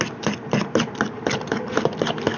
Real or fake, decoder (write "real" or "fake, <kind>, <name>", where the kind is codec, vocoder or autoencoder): real